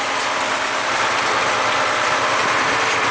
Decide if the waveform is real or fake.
real